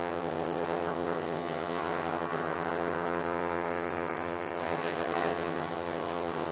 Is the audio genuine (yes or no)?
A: no